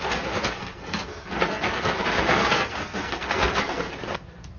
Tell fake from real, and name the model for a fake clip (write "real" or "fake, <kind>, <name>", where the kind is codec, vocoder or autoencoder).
fake, codec, SNAC